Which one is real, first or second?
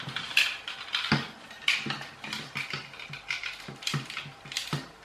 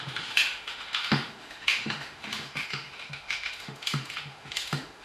first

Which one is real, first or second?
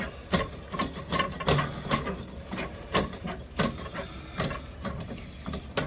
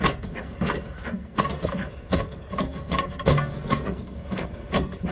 first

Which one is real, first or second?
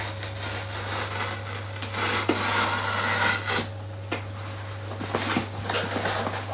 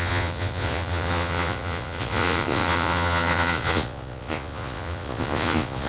first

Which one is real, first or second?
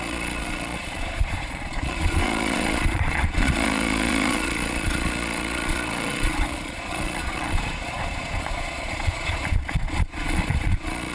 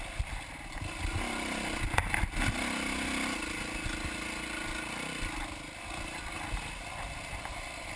second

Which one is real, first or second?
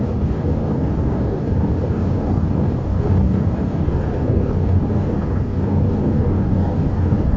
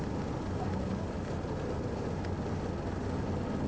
second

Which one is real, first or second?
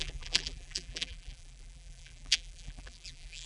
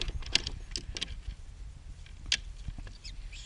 second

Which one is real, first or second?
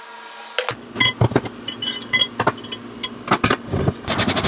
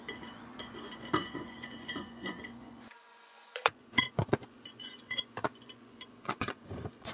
first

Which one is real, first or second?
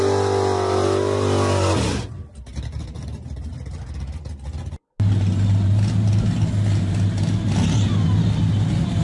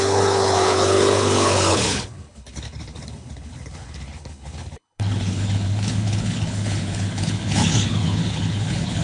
first